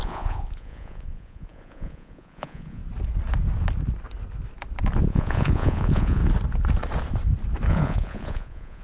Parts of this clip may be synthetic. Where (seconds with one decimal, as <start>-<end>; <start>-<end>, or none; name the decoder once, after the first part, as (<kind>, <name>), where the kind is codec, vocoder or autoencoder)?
0.0-2.8 (vocoder, Vocos); 5.0-6.2; 7.7-8.8